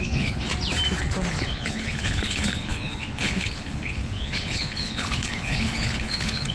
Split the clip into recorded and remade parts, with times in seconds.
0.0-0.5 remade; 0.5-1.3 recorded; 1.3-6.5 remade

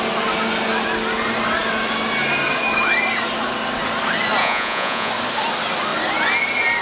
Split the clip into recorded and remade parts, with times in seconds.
0.0-4.4 recorded; 4.4-5.1 remade; 5.1-6.8 recorded

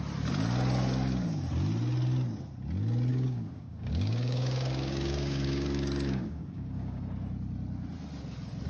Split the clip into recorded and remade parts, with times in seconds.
0.0-3.1 recorded; 3.1-7.0 remade; 7.0-8.7 recorded

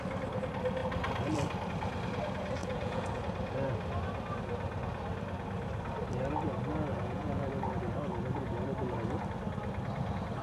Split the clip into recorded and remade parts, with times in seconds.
0.0-2.6 recorded; 2.6-3.2 remade; 3.2-6.9 recorded; 6.9-7.5 remade; 7.5-10.4 recorded

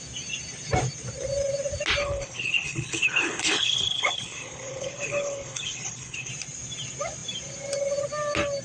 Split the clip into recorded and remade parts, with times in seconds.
0.0-2.0 recorded; 2.0-6.3 remade; 6.3-8.6 recorded

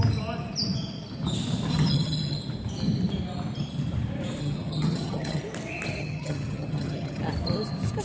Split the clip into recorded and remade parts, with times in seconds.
0.0-1.7 recorded; 1.7-2.4 remade; 2.4-4.4 recorded; 4.4-5.4 remade; 5.4-6.0 recorded; 6.0-7.2 remade; 7.2-8.0 recorded

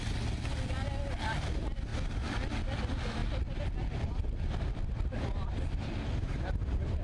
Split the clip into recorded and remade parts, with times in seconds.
0.0-7.0 recorded

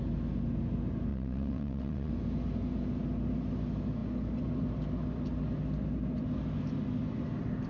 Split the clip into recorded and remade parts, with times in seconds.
0.0-1.1 recorded; 1.1-2.1 remade; 2.1-7.7 recorded